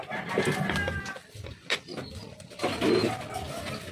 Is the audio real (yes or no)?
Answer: yes